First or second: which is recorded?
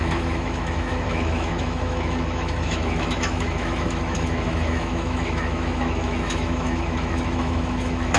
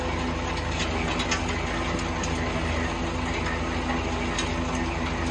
second